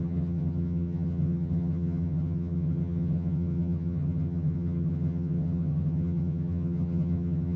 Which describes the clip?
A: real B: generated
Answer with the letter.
B